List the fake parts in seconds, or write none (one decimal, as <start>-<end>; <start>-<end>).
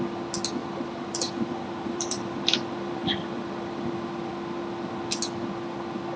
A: 0.6-4.3